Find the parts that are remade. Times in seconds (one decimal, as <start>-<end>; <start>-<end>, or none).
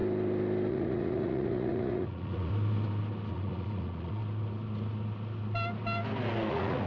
0.7-2.5; 3.3-4.2; 6.5-6.9